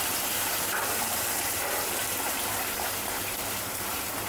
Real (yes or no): no